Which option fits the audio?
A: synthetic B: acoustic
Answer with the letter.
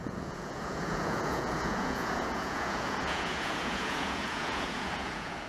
A